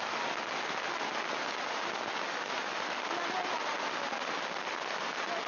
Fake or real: real